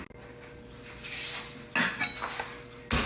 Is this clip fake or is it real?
real